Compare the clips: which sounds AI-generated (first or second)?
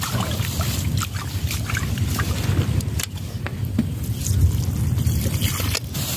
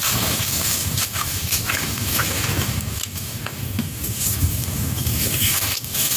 second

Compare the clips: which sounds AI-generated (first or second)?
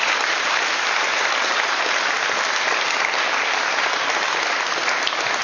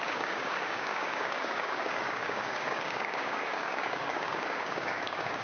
second